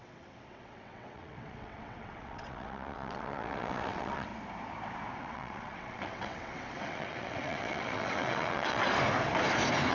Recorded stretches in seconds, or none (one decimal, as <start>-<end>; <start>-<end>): 4.3-5.2; 8.8-9.9